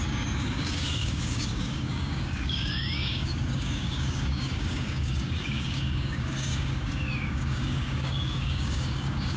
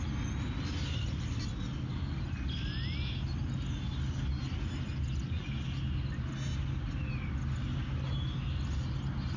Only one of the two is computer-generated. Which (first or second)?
first